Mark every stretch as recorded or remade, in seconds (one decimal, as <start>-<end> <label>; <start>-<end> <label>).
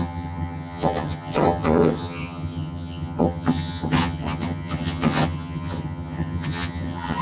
0.0-7.2 remade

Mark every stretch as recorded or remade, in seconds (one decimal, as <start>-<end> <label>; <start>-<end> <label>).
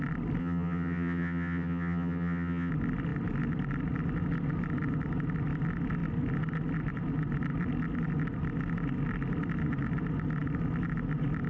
0.0-0.4 recorded; 0.4-2.7 remade; 2.7-11.5 recorded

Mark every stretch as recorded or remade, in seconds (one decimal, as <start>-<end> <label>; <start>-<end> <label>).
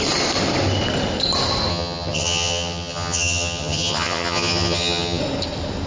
0.0-1.7 recorded; 1.7-5.2 remade; 5.2-5.9 recorded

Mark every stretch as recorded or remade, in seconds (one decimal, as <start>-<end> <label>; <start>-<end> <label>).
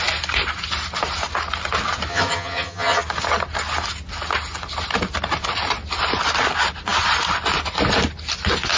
0.0-2.1 recorded; 2.1-3.0 remade; 3.0-8.8 recorded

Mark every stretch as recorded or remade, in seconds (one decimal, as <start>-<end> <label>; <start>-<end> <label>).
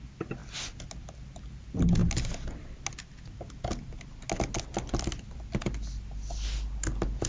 0.0-7.3 recorded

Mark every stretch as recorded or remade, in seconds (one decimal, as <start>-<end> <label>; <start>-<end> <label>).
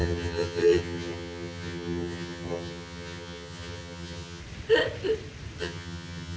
0.0-4.4 remade; 4.4-5.6 recorded; 5.6-6.4 remade